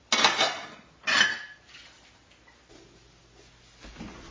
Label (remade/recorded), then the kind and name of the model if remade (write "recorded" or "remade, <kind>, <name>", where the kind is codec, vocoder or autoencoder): recorded